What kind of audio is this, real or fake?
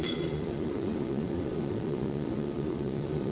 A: fake